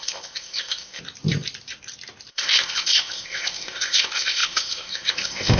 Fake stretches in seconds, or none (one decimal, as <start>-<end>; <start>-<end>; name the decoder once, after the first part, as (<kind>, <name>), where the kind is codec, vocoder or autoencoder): 0.0-1.0 (codec, ZipCodec); 2.3-5.6